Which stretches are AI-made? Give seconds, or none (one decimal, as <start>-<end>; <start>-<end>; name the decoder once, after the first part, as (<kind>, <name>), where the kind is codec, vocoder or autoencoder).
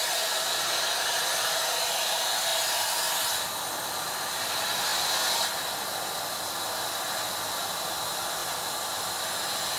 none